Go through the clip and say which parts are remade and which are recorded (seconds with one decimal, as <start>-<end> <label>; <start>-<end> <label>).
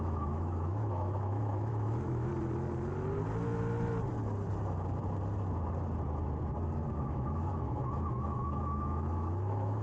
0.0-2.3 remade; 2.3-6.9 recorded; 6.9-9.8 remade